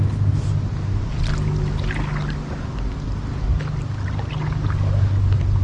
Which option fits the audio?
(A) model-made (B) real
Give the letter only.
B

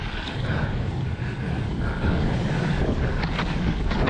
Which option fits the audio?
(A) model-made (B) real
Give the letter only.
A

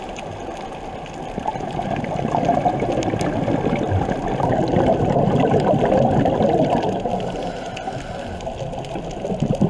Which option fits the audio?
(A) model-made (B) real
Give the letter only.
B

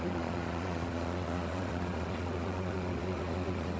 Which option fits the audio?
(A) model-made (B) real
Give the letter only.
A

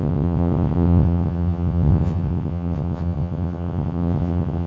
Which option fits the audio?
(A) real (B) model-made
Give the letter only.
B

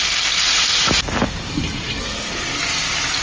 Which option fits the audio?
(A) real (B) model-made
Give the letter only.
A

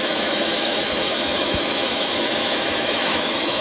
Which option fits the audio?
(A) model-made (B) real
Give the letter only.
A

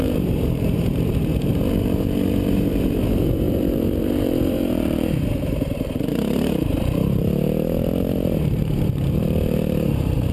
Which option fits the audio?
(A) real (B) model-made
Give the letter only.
B